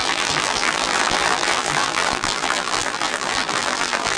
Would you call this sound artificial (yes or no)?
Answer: yes